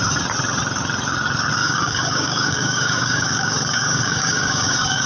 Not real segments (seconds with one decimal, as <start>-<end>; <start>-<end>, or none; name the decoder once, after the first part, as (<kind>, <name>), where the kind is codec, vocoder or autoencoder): 1.6-5.1 (codec, DAC)